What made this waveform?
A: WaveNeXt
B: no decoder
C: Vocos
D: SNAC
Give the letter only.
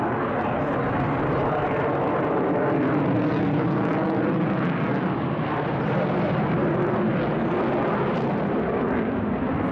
B